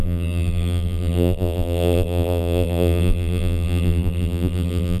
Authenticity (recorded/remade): remade